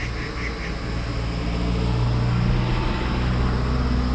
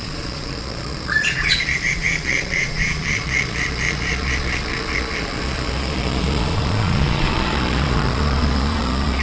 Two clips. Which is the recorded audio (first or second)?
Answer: first